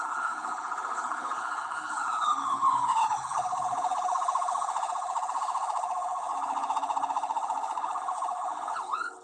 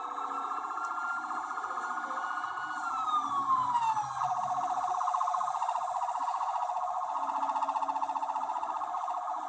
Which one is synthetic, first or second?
first